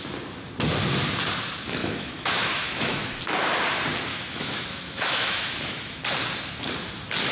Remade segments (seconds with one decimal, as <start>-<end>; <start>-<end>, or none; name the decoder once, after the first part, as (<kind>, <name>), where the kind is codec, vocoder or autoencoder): 1.8-3.2 (autoencoder, DAC-VAE); 4.1-6.0